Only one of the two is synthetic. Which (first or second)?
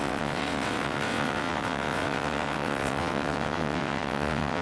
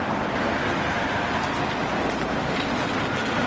first